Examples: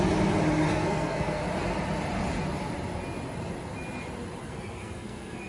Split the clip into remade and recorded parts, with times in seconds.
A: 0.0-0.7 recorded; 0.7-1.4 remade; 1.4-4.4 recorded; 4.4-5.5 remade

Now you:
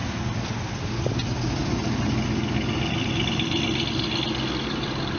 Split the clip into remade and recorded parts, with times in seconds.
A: 0.0-5.2 recorded